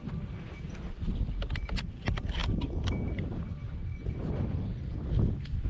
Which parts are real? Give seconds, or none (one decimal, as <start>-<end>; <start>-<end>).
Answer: 0.0-5.7